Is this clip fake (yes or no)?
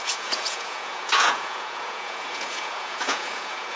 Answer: yes